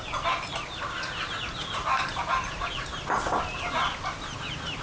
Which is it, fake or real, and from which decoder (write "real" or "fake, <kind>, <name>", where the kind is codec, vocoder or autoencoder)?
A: real